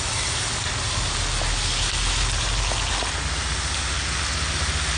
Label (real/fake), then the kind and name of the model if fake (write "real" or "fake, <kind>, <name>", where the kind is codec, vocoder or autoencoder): real